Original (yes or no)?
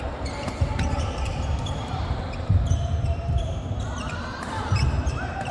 no